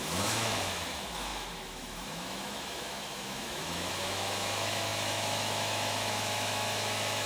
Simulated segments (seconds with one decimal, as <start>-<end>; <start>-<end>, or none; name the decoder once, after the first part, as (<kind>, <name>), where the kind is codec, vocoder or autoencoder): 0.0-7.3 (autoencoder, DAC-VAE)

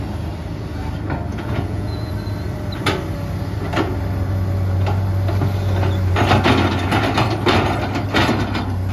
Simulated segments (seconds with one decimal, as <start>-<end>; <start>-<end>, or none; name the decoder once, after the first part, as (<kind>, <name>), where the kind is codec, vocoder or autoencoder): 1.3-2.1 (vocoder, Vocos)

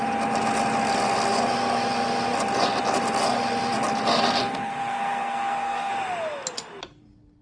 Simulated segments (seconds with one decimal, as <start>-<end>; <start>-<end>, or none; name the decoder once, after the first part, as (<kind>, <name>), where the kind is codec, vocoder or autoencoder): 4.4-5.9 (codec, SNAC)

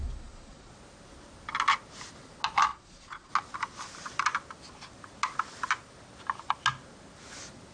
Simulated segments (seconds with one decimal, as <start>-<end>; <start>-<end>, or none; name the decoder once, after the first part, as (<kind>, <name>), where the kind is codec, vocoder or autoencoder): 0.0-0.7 (vocoder, Vocos); 2.7-3.3

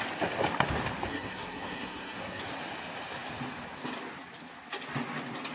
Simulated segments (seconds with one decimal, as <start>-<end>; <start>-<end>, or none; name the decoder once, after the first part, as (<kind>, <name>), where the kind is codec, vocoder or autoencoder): 1.1-2.4 (codec, SNAC)

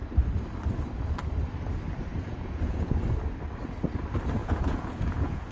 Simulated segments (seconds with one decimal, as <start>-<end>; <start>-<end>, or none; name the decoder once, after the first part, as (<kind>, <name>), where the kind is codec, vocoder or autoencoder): 2.1-3.0 (vocoder, Vocos); 4.4-5.5

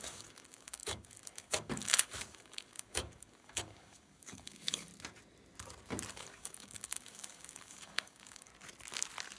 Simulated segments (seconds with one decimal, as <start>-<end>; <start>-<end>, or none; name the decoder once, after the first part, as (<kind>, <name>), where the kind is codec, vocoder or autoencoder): 0.0-4.9 (codec, DAC); 6.1-8.5